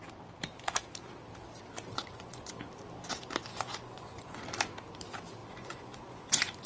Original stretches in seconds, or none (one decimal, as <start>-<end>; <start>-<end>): 0.0-2.0; 2.5-3.5; 4.4-5.4